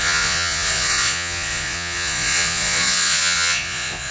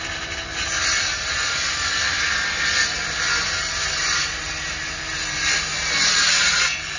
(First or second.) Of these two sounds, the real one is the second